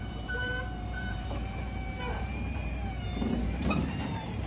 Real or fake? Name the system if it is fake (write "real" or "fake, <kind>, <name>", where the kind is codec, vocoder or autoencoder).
fake, vocoder, BigVGAN v2